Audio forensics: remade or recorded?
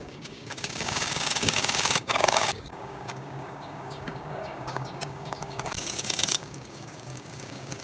remade